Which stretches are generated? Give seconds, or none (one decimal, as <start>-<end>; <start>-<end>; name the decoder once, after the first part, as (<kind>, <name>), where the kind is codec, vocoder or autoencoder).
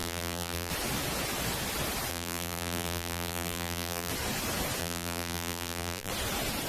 0.0-0.7 (vocoder, BigVGAN v2); 2.1-4.1; 4.8-6.1